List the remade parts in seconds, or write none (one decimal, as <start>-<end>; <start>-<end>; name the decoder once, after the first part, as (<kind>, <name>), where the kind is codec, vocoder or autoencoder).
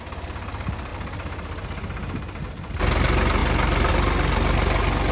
none